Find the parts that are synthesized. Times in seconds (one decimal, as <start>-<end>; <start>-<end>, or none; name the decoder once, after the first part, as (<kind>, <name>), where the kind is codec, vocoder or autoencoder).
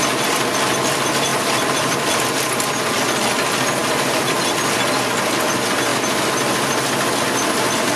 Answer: 3.8-4.4 (vocoder, BigVGAN v2)